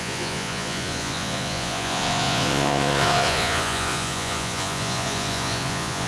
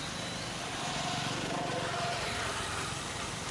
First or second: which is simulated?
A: first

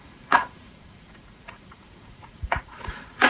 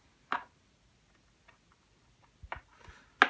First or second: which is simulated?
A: first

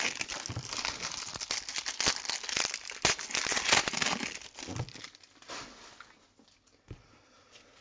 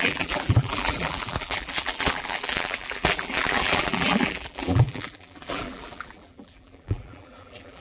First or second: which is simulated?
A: second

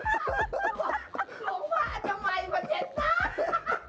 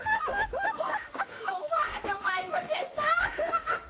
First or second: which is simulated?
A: second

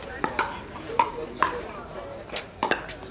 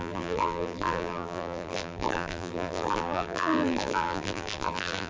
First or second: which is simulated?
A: second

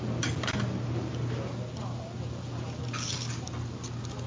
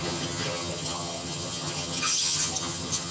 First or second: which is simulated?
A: second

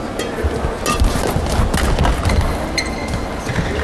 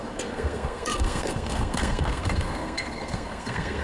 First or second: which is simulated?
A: second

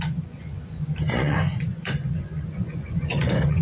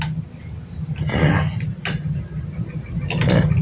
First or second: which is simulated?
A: first